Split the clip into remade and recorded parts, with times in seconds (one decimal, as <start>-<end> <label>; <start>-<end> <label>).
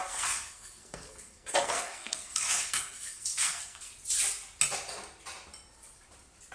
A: 0.0-3.9 remade; 3.9-6.5 recorded